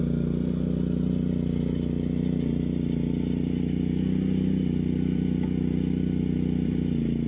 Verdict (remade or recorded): recorded